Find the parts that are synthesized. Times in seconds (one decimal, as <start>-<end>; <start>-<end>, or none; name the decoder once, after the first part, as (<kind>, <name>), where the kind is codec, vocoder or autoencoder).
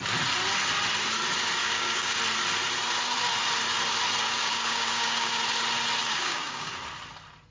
1.6-2.2 (codec, DAC); 4.2-5.4; 6.0-6.7